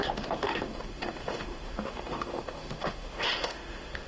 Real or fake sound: fake